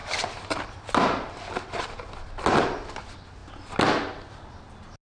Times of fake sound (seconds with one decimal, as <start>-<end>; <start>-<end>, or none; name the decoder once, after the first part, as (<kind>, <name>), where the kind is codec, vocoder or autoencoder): none